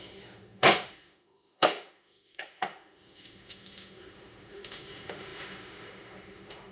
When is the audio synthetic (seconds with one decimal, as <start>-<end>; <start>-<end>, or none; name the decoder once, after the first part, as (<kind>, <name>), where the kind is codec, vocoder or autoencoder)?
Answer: 0.0-6.7 (autoencoder, DAC-VAE)